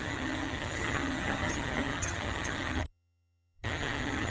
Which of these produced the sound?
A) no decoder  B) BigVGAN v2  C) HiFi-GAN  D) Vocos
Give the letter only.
C